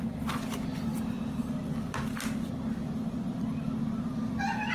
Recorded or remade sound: recorded